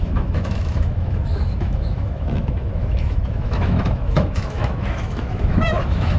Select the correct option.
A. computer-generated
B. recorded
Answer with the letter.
A